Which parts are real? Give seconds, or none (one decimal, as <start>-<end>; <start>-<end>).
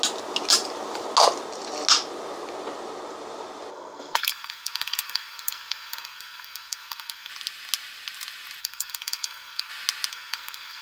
0.0-3.7; 7.3-8.6; 9.7-10.1